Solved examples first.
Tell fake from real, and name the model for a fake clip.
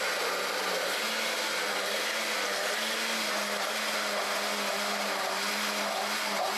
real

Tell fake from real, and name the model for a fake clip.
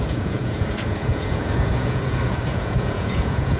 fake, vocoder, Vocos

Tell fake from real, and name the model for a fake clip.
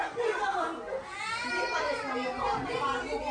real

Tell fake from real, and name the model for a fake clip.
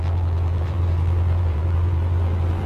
fake, vocoder, BigVGAN v2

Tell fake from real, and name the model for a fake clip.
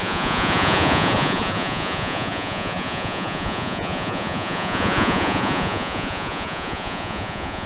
fake, vocoder, Vocos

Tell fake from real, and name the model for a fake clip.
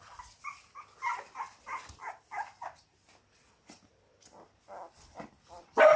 real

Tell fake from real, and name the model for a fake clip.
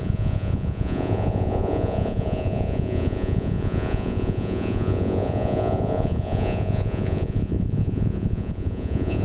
fake, vocoder, Vocos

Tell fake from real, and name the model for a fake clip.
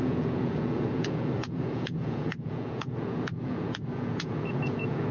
fake, vocoder, Vocos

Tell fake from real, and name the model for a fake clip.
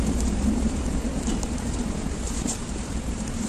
fake, vocoder, BigVGAN v2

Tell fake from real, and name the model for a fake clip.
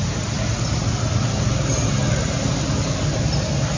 real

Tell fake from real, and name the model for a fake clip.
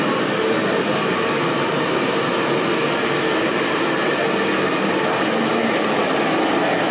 real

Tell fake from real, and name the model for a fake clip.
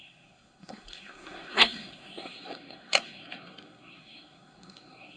fake, codec, SNAC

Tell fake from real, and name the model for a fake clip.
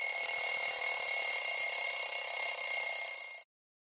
real